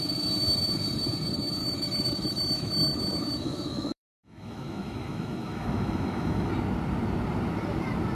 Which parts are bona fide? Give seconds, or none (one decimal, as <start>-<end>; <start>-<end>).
0.0-1.6; 6.5-8.1